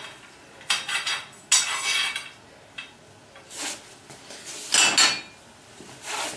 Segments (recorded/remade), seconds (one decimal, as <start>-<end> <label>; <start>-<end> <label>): 0.0-6.4 recorded